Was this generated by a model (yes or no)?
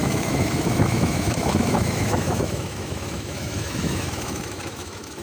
yes